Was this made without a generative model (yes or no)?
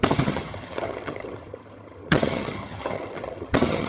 no